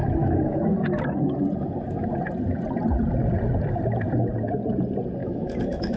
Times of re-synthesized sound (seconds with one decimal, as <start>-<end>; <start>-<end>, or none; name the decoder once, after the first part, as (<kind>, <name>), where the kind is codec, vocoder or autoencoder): 0.0-0.6 (autoencoder, DAC-VAE); 5.2-6.0